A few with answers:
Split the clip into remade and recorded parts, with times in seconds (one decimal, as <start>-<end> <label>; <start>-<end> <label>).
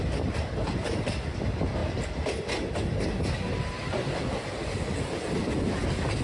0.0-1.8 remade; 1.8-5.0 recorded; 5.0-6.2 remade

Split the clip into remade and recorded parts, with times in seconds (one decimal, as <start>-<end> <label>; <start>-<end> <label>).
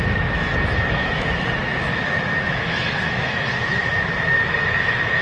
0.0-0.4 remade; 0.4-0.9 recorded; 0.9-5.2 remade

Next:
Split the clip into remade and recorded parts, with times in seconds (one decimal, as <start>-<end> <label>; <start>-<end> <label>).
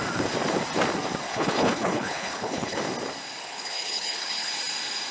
0.0-1.3 recorded; 1.3-2.8 remade; 2.8-3.4 recorded; 3.4-4.5 remade; 4.5-5.1 recorded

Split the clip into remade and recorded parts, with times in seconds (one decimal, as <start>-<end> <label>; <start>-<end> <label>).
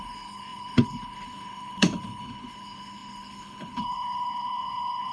0.0-5.1 remade